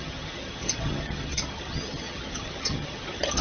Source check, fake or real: fake